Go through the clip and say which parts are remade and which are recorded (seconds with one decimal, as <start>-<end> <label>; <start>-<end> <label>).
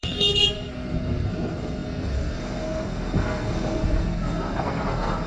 0.0-5.3 remade